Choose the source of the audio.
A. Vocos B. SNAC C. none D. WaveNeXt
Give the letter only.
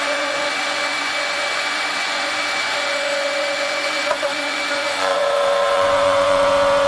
A